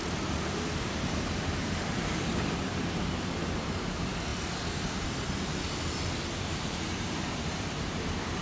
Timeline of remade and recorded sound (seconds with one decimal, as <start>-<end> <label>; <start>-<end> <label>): 0.0-4.3 remade; 4.3-6.3 recorded; 6.3-8.4 remade